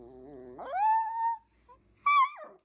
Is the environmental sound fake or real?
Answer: real